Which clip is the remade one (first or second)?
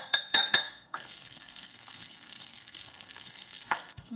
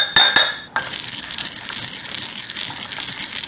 first